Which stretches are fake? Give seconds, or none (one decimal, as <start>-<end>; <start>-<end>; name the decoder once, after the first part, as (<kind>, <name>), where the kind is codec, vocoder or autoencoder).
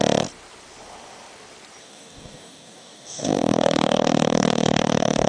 1.8-5.3 (codec, DAC)